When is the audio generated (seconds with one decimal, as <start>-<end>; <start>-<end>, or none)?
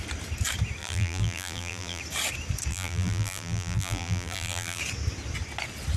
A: 0.8-2.0; 2.7-4.8